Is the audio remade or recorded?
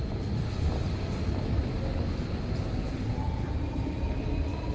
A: recorded